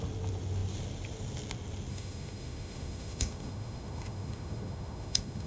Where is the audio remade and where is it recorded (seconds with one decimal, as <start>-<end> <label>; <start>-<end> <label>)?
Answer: 0.0-1.9 recorded; 1.9-5.5 remade